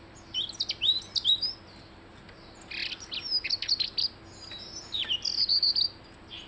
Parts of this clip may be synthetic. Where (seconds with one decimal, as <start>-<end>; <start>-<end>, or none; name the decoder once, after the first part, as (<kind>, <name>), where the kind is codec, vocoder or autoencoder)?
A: none

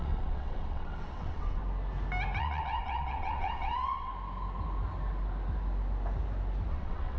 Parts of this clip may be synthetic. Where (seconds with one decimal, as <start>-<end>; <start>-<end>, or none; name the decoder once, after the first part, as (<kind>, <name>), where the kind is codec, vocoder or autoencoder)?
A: 0.0-1.6 (vocoder, WaveNeXt); 2.4-4.1; 6.7-7.2

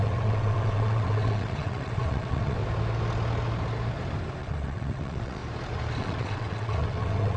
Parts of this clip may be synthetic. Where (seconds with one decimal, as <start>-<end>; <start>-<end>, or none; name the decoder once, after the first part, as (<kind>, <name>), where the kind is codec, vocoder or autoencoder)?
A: 0.0-2.6 (vocoder, WaveNeXt); 4.4-5.4; 6.0-7.4

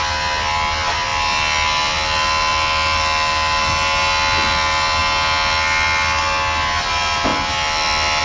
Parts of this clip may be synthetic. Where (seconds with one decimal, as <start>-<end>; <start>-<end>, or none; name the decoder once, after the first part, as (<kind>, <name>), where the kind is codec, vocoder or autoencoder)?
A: none

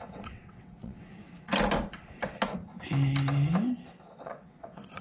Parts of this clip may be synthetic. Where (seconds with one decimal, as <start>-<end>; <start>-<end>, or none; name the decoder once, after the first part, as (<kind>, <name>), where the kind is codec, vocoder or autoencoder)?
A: 0.0-1.1 (vocoder, WaveNeXt); 4.1-5.0

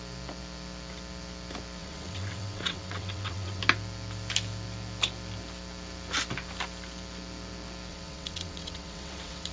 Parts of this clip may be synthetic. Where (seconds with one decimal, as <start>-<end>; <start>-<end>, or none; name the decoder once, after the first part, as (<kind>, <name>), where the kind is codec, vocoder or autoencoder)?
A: 1.8-3.6 (vocoder, WaveNeXt); 7.9-9.5